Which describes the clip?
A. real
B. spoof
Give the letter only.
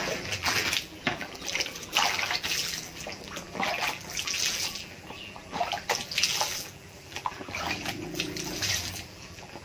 B